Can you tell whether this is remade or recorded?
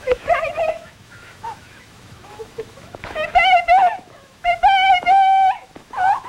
remade